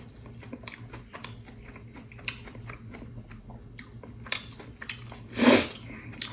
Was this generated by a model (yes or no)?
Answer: no